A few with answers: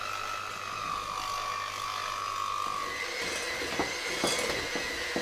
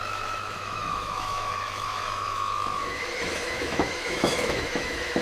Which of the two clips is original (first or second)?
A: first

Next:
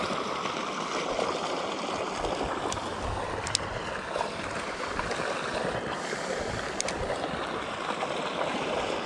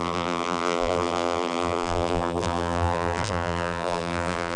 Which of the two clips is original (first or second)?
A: first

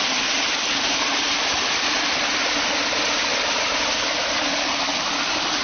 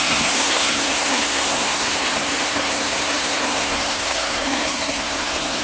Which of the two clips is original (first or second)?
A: first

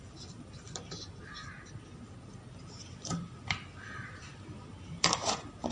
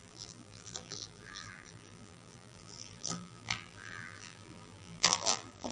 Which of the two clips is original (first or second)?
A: first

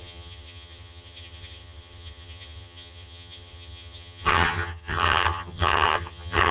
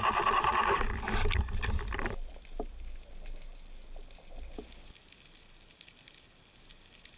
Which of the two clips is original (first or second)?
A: second